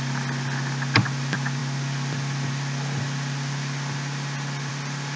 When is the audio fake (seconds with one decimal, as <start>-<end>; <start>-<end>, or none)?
none